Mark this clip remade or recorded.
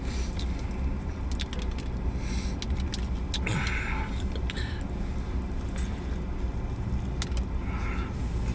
recorded